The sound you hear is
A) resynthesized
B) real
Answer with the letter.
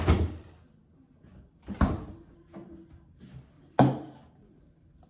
B